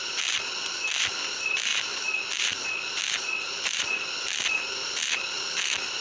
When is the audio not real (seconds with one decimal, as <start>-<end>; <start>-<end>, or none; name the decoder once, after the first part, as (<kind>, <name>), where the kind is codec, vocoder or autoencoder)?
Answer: none